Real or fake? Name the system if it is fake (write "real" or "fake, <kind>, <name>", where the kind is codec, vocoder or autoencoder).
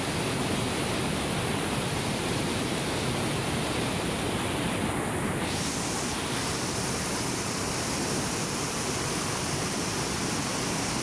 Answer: real